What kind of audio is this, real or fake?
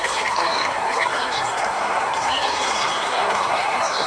fake